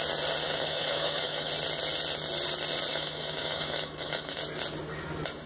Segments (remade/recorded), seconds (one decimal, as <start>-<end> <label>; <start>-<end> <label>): 0.0-0.4 recorded; 0.4-1.5 remade; 1.5-2.9 recorded; 2.9-4.4 remade; 4.4-5.5 recorded